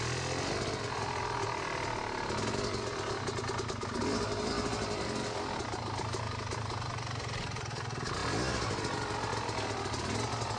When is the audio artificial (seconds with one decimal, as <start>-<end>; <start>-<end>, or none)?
none